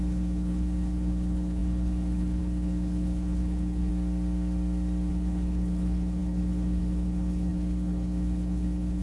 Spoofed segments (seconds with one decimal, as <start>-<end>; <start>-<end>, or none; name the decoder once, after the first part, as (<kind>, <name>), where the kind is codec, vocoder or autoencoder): 0.0-3.9 (codec, HILCodec); 5.1-9.0